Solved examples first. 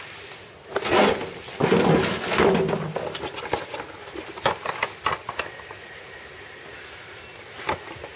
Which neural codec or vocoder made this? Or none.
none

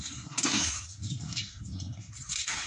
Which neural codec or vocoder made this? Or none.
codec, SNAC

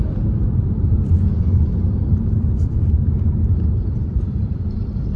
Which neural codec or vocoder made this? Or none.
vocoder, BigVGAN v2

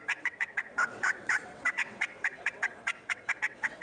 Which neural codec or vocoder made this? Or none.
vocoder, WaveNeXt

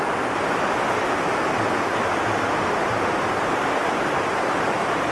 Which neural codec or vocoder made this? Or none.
none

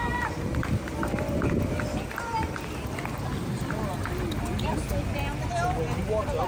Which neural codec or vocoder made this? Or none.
none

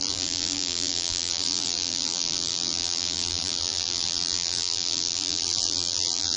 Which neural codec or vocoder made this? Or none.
vocoder, BigVGAN v2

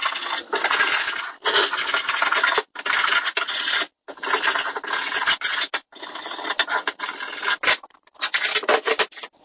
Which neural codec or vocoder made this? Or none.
none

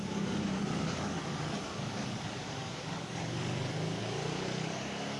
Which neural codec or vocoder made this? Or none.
codec, DAC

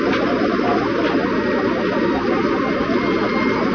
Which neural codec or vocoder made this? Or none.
none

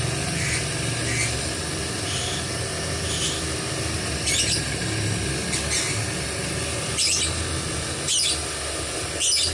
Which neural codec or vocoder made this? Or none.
none